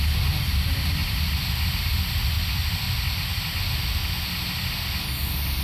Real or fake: real